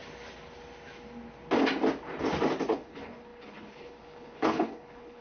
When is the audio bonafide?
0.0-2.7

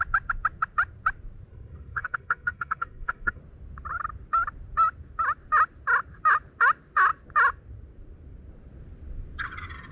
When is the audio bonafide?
0.0-1.5; 3.4-9.9

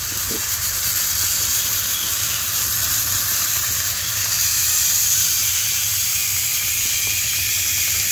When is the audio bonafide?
6.2-8.1

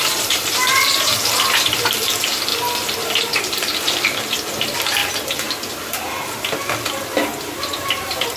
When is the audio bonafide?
1.1-1.8; 2.5-3.2; 5.0-7.6

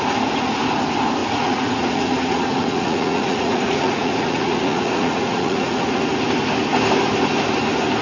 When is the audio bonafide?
0.0-1.2; 6.0-8.0